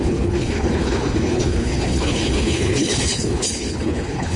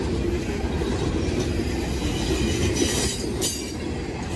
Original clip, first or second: second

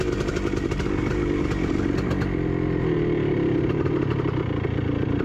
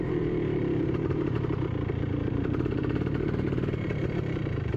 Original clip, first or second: first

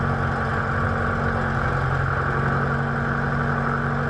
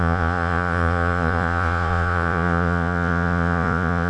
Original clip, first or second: first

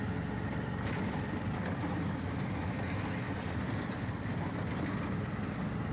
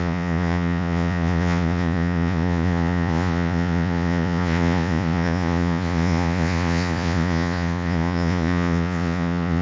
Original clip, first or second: first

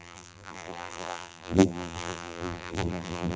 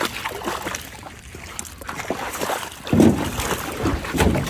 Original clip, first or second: second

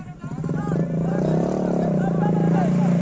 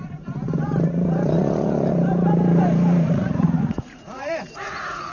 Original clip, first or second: first